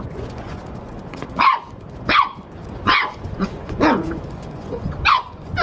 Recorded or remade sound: remade